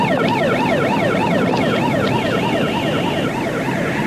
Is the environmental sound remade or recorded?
recorded